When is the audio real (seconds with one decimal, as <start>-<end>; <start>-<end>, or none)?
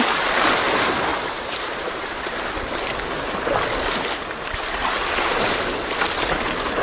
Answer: 0.0-1.1; 2.2-6.8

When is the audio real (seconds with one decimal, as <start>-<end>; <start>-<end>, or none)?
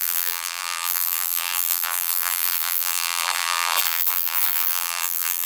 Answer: none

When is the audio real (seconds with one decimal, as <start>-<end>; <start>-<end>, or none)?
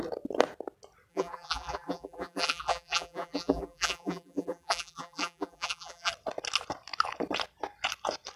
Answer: 0.0-1.1; 6.1-8.4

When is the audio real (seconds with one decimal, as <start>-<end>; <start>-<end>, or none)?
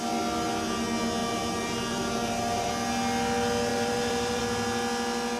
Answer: 0.0-1.2; 2.7-3.7; 4.4-5.4